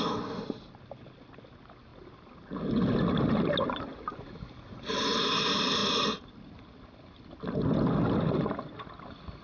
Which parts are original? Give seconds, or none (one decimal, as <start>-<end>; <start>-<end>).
0.0-9.4